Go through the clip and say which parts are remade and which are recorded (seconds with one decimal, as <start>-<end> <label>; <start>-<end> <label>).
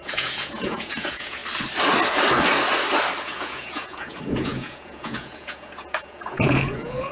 0.0-1.4 remade; 1.4-3.2 recorded; 3.2-7.1 remade